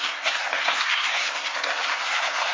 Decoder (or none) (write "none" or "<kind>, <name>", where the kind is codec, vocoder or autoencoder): codec, SNAC